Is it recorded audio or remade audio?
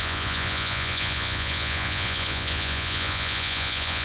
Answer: remade